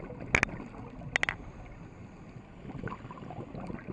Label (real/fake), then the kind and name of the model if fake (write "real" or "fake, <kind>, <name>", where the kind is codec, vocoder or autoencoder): real